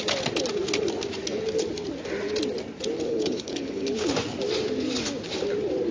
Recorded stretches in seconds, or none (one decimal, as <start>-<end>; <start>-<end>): 0.0-3.1; 4.1-5.9